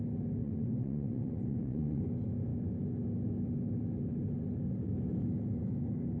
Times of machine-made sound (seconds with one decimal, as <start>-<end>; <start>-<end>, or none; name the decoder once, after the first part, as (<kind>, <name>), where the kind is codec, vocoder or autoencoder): 0.4-2.0 (vocoder, Vocos)